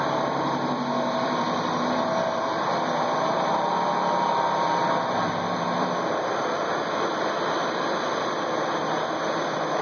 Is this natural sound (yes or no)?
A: no